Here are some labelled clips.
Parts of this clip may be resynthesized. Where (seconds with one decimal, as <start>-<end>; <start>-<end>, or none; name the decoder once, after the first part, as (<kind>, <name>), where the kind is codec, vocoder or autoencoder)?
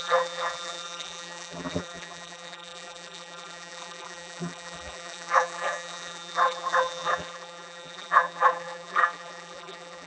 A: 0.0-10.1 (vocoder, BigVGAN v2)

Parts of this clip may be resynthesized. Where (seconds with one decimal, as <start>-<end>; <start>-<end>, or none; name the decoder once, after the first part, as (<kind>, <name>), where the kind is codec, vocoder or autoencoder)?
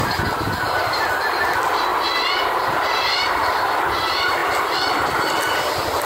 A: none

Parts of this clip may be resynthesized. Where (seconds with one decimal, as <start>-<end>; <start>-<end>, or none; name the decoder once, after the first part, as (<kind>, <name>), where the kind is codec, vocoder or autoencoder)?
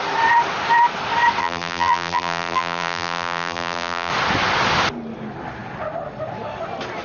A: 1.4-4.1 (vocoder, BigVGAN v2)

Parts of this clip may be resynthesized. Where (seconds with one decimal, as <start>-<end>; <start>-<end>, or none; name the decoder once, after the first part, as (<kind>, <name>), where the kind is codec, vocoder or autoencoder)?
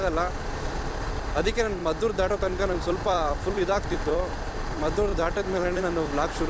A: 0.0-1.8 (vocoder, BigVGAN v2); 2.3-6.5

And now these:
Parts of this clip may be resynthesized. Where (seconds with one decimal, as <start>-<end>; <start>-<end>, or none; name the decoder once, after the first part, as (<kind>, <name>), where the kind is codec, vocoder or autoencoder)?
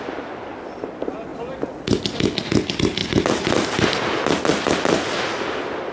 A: 1.3-2.4 (vocoder, BigVGAN v2); 3.0-3.9; 4.5-5.3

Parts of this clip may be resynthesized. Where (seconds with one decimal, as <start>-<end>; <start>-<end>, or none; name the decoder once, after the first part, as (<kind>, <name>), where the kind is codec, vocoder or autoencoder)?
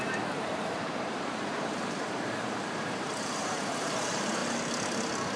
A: 0.0-4.4 (vocoder, BigVGAN v2)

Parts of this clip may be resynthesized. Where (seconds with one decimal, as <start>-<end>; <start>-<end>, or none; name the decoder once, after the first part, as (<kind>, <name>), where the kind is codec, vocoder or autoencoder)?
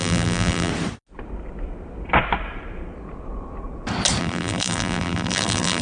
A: 0.0-0.7 (vocoder, BigVGAN v2); 4.2-5.8